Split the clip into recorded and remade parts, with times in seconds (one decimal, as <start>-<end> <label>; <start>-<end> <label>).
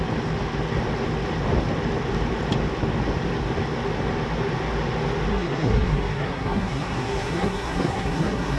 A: 0.0-5.3 recorded; 5.3-8.6 remade